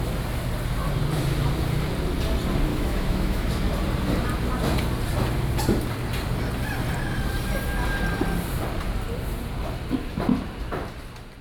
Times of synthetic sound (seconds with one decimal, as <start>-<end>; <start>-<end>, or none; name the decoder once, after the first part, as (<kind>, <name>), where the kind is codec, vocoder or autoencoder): 2.7-3.5 (autoencoder, DAC-VAE)

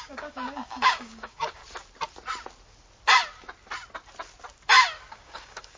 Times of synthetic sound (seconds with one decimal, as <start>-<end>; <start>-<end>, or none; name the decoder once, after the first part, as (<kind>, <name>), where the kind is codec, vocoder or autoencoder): 0.0-1.6 (codec, DAC); 5.1-5.8

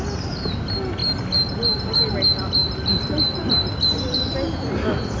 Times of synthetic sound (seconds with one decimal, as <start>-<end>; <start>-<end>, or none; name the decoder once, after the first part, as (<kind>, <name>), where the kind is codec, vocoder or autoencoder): none

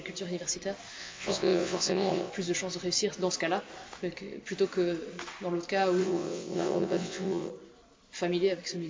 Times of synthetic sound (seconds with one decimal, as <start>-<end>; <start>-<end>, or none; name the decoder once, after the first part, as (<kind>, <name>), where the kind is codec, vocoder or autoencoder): 1.0-2.3 (vocoder, WaveNeXt); 6.0-7.5

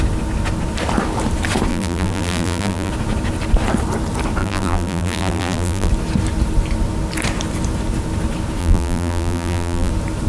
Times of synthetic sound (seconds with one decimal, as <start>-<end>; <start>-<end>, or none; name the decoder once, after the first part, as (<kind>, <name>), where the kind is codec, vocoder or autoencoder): 1.7-2.9 (vocoder, BigVGAN v2); 4.4-5.9; 8.6-9.9

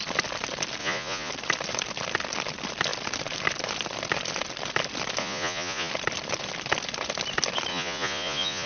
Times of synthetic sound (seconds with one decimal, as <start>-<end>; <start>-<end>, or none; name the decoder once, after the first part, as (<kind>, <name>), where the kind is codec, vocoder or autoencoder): 0.8-1.3 (vocoder, Vocos); 5.2-5.9; 7.7-8.7